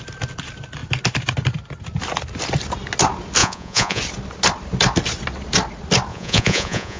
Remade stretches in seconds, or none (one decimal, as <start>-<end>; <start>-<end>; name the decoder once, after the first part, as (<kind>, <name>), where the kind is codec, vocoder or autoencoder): 3.4-4.0 (vocoder, Vocos); 6.1-7.0

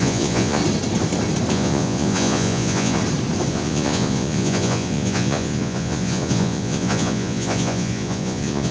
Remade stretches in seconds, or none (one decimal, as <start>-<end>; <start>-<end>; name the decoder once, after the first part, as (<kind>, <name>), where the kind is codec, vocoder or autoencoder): 0.0-0.6 (vocoder, Vocos); 1.5-3.0; 3.5-8.7

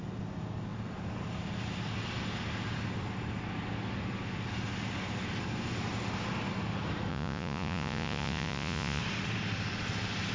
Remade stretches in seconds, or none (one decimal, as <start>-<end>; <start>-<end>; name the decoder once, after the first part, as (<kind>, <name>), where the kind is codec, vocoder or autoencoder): 7.1-9.0 (vocoder, Vocos)

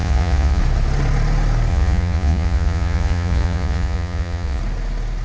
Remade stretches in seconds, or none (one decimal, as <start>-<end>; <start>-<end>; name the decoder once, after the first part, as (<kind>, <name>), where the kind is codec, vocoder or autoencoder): 0.0-0.6 (vocoder, Vocos); 1.7-4.6

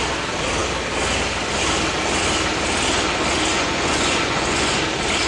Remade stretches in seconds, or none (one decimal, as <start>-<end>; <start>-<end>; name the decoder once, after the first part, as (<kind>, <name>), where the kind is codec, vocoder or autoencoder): 3.5-4.8 (vocoder, Vocos)

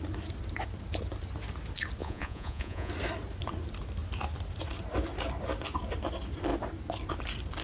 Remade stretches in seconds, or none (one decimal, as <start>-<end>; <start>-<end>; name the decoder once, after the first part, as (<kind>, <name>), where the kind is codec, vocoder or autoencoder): 2.0-2.9 (vocoder, Vocos)